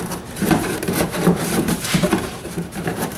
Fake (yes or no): yes